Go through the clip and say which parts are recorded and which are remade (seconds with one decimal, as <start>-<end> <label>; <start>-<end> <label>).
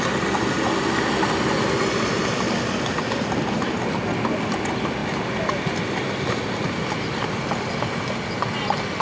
0.0-9.0 recorded